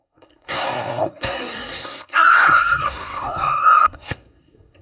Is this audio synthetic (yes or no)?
yes